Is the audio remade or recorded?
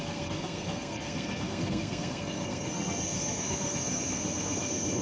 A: remade